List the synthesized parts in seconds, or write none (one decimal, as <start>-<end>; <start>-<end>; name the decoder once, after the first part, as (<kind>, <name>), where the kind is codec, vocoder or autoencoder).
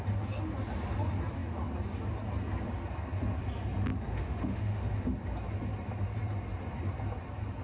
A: 4.1-5.1 (autoencoder, DAC-VAE)